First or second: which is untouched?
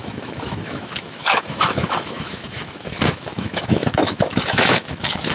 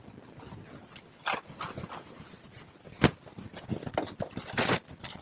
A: second